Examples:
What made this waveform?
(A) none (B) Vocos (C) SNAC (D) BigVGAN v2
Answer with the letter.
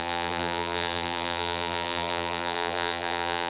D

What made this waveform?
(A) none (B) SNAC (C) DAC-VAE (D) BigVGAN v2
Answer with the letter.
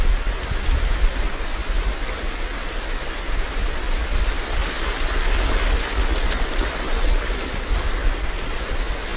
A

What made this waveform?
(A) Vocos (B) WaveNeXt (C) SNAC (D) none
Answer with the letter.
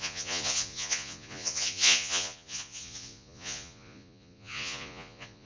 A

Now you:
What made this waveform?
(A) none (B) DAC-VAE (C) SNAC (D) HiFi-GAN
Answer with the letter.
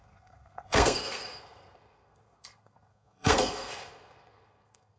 C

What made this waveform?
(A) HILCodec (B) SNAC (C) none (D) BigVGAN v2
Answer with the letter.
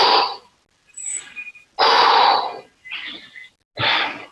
C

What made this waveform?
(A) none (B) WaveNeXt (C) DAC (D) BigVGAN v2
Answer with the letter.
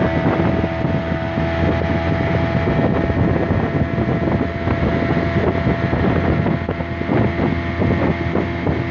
A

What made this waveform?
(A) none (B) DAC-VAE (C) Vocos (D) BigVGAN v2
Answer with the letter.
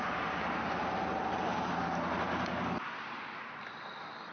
A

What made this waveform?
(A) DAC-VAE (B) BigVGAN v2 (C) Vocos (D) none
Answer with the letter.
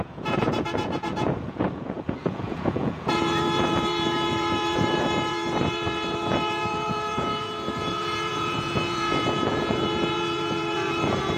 C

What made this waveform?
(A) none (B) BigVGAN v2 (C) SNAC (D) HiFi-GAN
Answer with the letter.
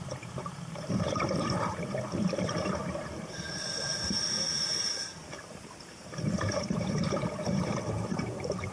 B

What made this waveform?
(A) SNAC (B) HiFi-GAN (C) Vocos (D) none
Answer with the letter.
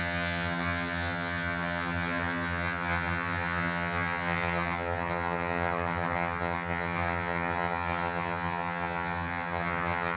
B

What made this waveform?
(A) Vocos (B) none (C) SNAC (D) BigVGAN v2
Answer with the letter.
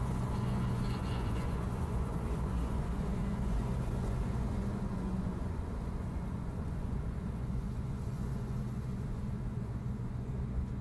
A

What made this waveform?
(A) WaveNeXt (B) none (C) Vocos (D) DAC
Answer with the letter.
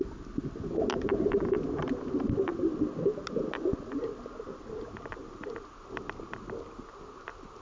B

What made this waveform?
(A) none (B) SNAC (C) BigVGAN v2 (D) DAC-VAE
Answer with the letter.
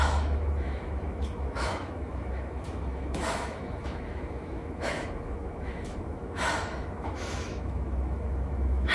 D